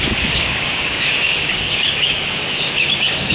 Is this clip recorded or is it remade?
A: remade